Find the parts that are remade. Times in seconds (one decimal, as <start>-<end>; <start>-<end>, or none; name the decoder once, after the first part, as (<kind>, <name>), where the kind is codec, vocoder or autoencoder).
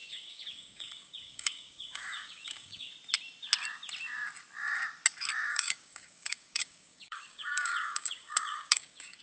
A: 0.0-2.9 (codec, DAC); 5.5-9.2